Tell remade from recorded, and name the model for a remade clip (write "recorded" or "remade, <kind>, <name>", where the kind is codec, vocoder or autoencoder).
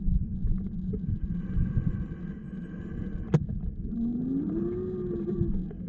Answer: recorded